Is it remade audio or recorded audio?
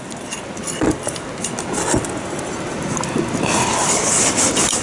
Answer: recorded